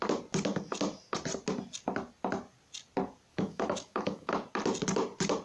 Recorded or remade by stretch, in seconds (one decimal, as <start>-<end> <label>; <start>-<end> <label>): 0.0-3.3 recorded; 3.3-4.3 remade; 4.3-5.4 recorded